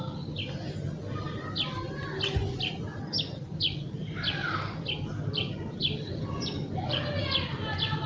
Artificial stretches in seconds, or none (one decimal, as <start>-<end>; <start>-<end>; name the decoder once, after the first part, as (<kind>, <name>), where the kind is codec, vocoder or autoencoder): none